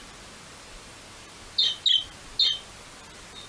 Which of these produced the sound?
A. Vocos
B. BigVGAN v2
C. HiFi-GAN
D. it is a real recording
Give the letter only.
D